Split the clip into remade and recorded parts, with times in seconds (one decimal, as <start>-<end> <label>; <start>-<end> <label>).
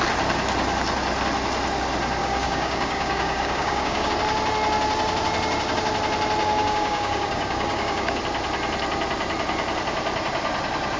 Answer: 0.0-2.2 recorded; 2.2-4.1 remade; 4.1-6.4 recorded; 6.4-8.2 remade; 8.2-11.0 recorded